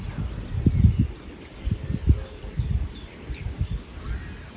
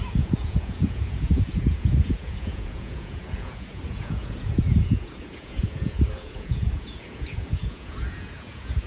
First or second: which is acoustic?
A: first